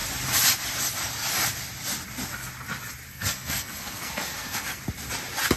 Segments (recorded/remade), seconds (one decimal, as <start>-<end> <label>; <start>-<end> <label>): 0.0-3.1 recorded; 3.1-4.8 remade; 4.8-5.6 recorded